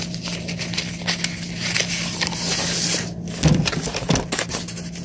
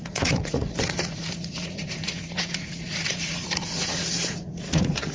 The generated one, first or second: second